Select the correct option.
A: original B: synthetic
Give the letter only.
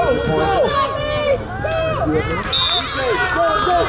A